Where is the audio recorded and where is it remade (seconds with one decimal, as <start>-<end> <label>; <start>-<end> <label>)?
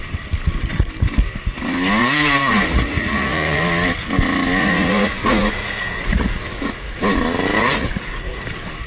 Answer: 0.0-2.0 recorded; 2.0-3.6 remade; 3.6-4.6 recorded; 4.6-7.0 remade; 7.0-7.6 recorded; 7.6-8.4 remade; 8.4-8.9 recorded